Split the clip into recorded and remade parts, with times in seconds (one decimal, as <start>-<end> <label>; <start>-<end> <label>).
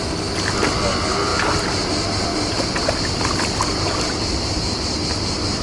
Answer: 0.0-5.6 recorded